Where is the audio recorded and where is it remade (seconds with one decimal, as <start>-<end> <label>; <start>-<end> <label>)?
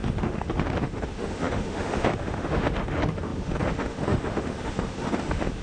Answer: 0.0-5.6 remade